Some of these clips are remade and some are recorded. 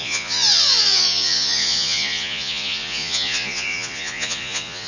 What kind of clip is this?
remade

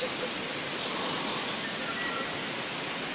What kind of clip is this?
recorded